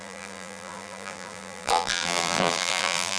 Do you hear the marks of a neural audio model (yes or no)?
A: yes